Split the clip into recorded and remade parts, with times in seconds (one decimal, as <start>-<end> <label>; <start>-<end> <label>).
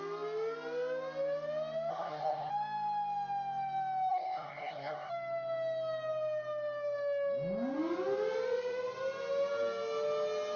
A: 0.0-1.9 recorded; 1.9-2.5 remade; 2.5-4.1 recorded; 4.1-5.1 remade; 5.1-10.6 recorded